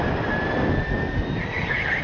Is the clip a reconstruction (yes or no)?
no